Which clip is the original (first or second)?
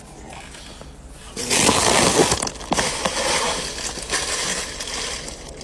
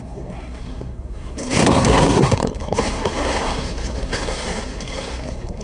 first